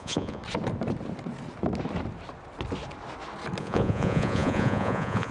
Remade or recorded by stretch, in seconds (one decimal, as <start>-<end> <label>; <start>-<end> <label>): 0.0-0.4 remade; 0.4-3.6 recorded; 3.6-5.3 remade